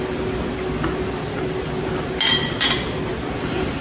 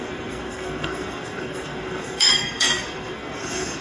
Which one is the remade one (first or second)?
second